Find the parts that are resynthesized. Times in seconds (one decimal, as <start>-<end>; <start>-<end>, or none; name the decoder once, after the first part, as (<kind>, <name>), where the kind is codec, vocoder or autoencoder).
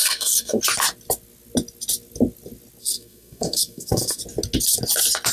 0.0-0.6 (codec, SNAC); 2.8-4.2